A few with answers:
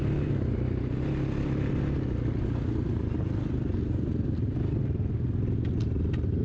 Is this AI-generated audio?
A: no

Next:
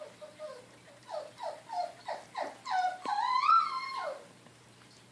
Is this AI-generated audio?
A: no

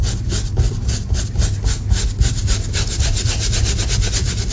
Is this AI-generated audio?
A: no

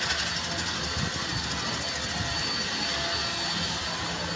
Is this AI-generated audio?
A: no